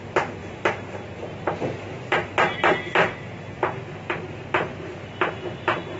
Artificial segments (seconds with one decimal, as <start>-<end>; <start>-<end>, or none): 4.7-6.0